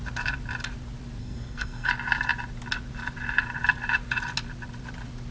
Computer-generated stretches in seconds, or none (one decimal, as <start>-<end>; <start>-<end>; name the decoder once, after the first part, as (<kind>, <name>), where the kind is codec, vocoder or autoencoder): 1.2-1.9 (codec, SNAC)